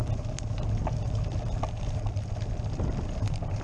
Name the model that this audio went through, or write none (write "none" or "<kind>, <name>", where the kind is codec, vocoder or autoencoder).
none